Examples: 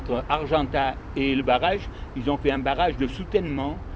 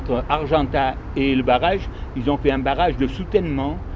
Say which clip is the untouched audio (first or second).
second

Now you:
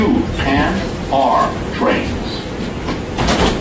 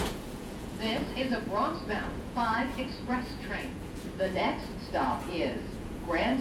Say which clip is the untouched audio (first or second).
first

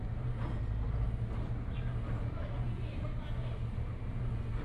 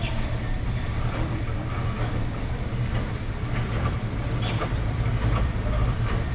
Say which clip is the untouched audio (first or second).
first